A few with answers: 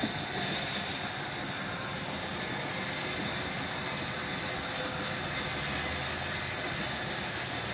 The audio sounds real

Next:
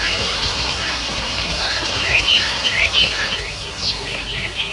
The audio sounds fake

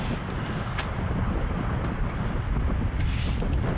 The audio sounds real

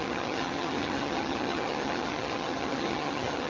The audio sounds fake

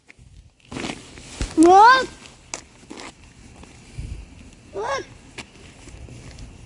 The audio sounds real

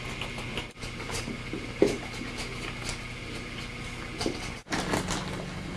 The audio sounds real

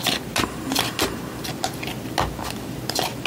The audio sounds real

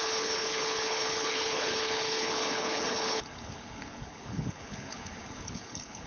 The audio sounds fake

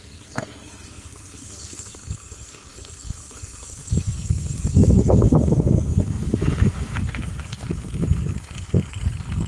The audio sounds fake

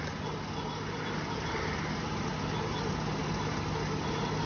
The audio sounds real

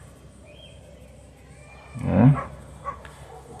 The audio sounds real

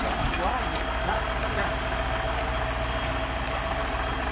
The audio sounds real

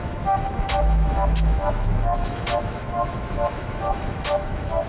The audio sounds fake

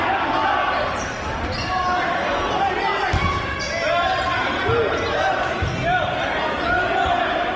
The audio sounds real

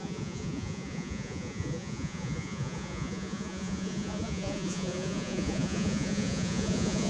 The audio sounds fake